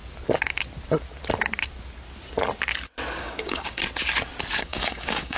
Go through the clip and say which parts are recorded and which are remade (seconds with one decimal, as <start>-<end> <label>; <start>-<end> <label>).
0.0-3.2 recorded; 3.2-3.8 remade; 3.8-4.6 recorded; 4.6-5.4 remade